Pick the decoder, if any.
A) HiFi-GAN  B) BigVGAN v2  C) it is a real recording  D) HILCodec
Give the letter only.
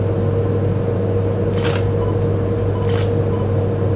C